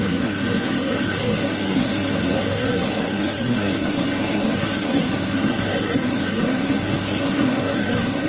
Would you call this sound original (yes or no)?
no